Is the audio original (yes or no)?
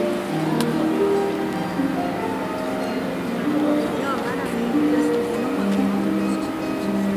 yes